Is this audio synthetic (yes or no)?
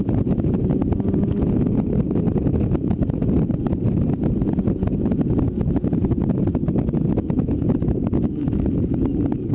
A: no